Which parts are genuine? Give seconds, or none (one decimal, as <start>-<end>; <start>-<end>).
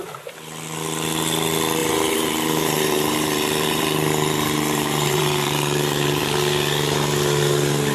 0.0-1.8; 6.2-7.9